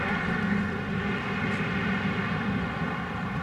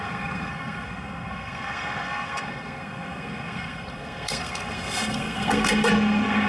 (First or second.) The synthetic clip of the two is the second